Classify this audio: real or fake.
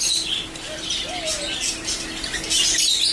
real